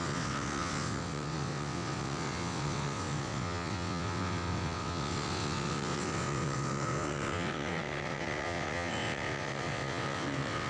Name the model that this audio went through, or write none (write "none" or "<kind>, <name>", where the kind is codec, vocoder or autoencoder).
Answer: vocoder, WaveNeXt